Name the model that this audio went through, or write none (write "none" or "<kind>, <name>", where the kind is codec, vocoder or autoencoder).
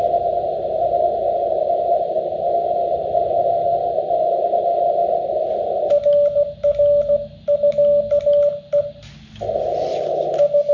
none